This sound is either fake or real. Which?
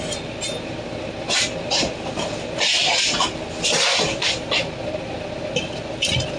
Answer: fake